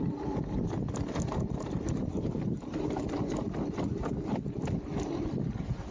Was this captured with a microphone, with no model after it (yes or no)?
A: yes